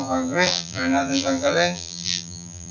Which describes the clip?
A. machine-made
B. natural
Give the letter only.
A